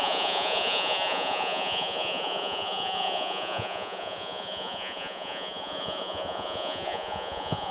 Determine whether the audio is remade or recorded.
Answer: remade